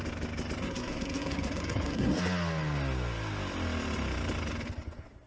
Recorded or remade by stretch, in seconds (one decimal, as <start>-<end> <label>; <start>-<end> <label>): 0.0-0.6 recorded; 0.6-2.1 remade; 2.1-5.3 recorded